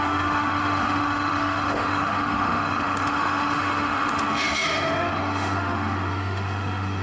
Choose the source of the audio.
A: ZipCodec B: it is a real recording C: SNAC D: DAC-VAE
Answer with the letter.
D